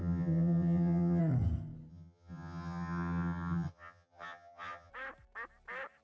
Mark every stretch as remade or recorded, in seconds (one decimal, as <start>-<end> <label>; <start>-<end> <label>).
0.0-1.2 remade; 1.2-1.9 recorded; 1.9-4.9 remade; 4.9-6.0 recorded